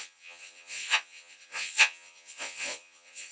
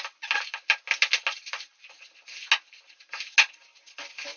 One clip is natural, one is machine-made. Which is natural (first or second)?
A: second